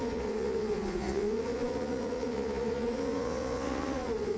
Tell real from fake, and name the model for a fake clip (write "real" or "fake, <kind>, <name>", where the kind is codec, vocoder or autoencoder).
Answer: fake, vocoder, Vocos